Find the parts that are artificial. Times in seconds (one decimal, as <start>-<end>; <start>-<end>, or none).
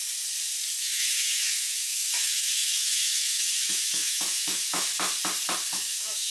0.8-4.9; 5.7-6.3